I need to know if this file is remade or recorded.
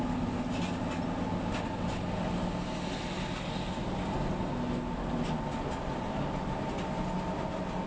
recorded